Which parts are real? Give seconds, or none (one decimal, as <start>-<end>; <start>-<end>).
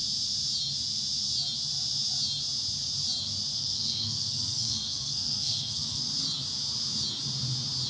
0.0-3.5; 6.1-7.9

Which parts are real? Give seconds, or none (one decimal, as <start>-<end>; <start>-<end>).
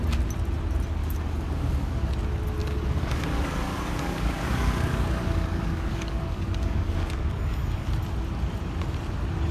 0.0-1.0; 2.1-2.6; 7.9-9.5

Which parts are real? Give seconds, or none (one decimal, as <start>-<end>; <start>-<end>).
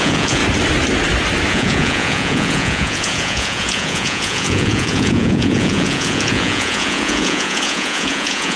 0.4-1.5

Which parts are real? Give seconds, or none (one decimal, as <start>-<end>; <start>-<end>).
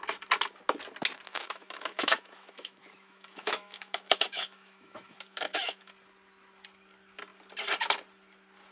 0.0-1.3; 5.9-8.7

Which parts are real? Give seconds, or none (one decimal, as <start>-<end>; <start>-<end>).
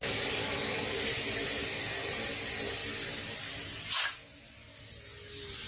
0.0-5.7